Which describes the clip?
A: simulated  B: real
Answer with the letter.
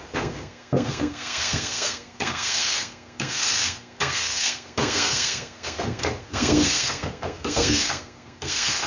A